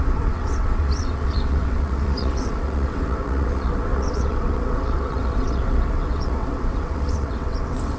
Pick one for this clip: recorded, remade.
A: remade